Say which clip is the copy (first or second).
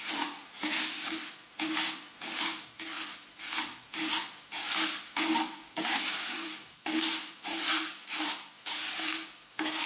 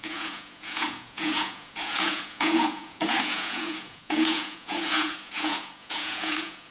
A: second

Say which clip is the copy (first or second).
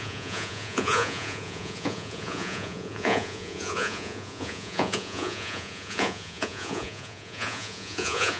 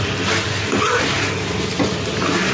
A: first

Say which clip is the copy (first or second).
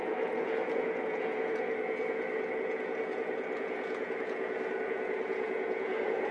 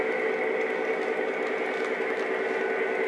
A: first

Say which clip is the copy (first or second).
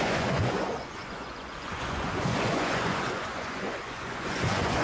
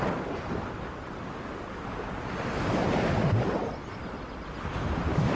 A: first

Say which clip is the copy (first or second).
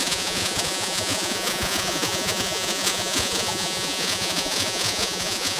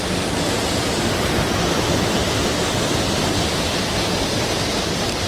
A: first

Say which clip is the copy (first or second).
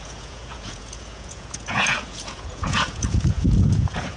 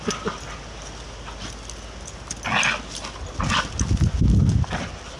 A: first